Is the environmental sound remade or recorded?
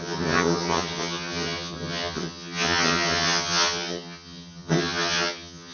remade